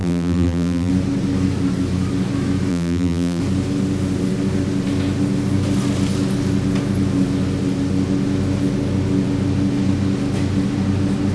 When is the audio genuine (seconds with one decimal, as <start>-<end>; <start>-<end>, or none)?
0.9-2.7; 3.4-11.3